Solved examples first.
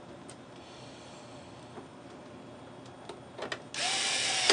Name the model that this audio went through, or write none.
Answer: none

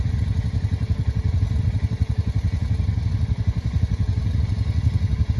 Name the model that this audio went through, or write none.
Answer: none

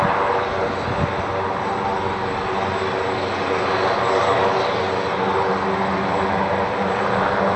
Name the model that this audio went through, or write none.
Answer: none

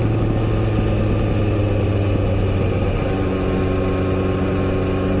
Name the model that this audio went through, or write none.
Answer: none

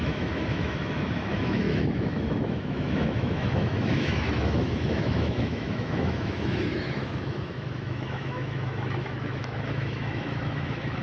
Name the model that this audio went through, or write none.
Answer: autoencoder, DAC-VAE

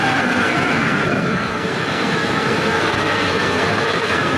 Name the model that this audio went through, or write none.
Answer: codec, SNAC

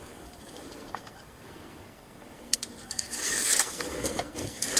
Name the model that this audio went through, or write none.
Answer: codec, SNAC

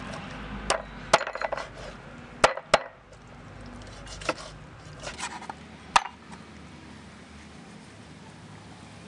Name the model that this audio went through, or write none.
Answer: none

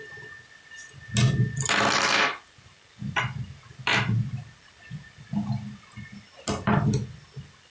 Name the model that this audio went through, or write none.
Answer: none